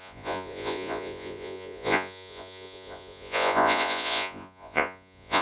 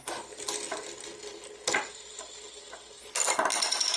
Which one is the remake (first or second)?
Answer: first